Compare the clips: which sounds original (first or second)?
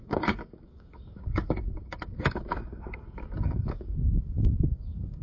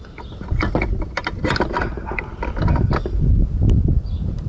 second